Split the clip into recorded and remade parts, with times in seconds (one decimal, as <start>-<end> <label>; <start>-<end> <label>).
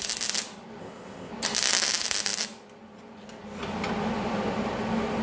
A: 0.0-0.8 recorded; 0.8-1.3 remade; 1.3-5.2 recorded